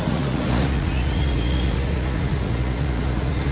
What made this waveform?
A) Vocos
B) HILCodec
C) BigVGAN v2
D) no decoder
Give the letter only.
A